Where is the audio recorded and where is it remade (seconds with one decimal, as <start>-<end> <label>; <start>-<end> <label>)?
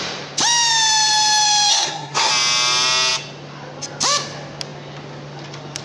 0.0-1.7 recorded; 1.7-2.3 remade; 2.3-5.8 recorded